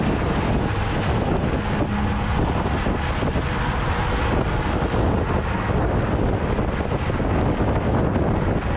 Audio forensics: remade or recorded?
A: recorded